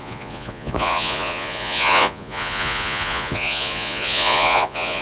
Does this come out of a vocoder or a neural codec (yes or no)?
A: yes